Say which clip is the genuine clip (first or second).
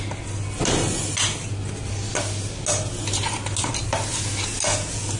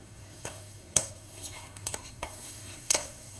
first